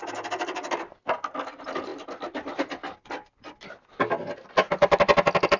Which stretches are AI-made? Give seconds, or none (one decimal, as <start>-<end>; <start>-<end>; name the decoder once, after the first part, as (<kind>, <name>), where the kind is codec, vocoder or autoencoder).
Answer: none